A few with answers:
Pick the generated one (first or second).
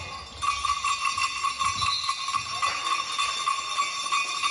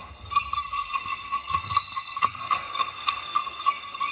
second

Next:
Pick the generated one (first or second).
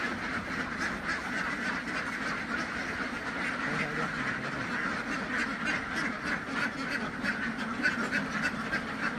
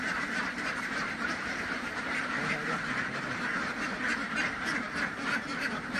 second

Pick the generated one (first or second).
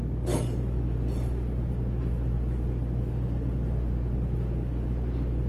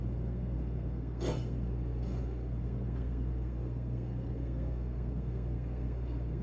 second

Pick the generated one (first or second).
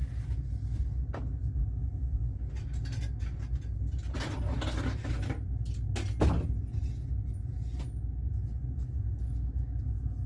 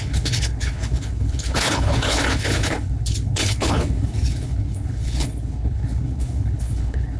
second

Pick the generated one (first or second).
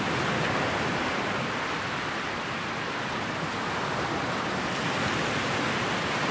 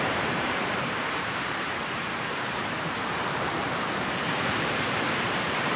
second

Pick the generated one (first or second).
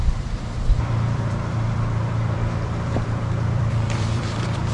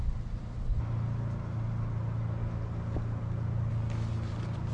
first